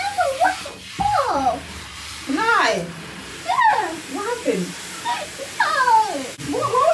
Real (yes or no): no